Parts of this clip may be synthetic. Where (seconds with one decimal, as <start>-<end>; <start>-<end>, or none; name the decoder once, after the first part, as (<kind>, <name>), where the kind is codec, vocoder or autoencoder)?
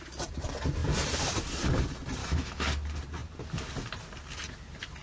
2.2-2.7 (autoencoder, DAC-VAE)